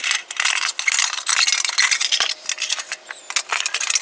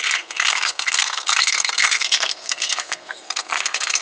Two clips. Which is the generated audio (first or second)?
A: second